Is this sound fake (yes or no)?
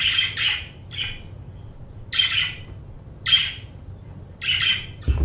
no